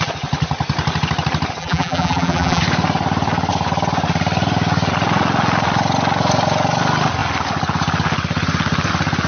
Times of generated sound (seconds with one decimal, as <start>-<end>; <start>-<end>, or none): 1.6-2.6